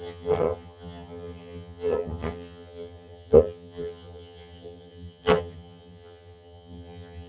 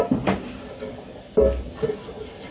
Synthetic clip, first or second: first